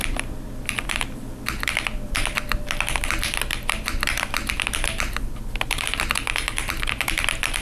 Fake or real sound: fake